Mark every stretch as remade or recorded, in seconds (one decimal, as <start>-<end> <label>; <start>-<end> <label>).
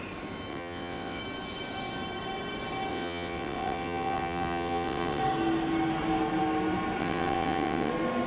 0.0-0.5 recorded; 0.5-1.2 remade; 1.2-2.9 recorded; 2.9-5.2 remade; 5.2-7.0 recorded; 7.0-7.9 remade; 7.9-8.3 recorded